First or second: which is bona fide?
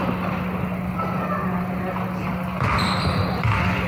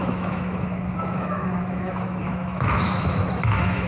first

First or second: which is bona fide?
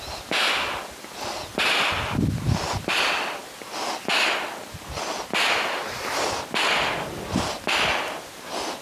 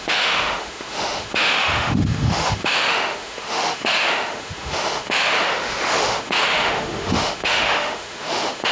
first